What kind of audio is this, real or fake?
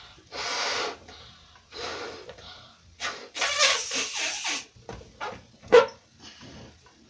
real